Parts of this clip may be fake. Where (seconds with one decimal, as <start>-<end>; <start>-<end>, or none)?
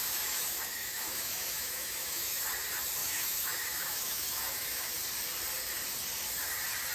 0.0-2.4; 3.0-4.9